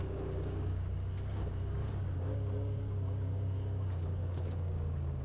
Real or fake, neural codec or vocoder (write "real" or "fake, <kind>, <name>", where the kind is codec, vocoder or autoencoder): fake, codec, DAC